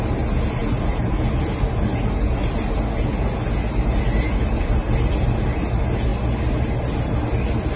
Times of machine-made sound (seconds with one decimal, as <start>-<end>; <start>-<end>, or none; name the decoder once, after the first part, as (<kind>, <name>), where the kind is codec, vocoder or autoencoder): none